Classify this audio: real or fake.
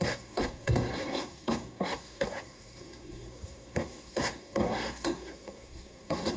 fake